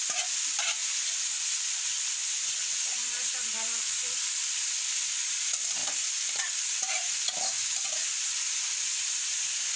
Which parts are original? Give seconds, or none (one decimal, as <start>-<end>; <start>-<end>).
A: 0.8-1.7